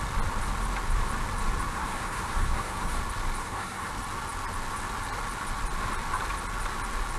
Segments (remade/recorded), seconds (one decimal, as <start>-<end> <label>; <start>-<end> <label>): 0.0-1.7 recorded; 1.7-3.0 remade; 3.0-3.4 recorded; 3.4-3.9 remade; 3.9-7.2 recorded